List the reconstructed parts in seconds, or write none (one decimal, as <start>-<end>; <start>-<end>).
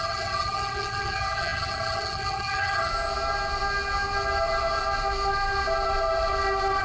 0.0-2.9